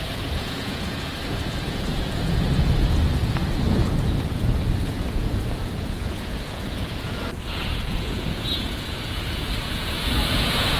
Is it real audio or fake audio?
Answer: fake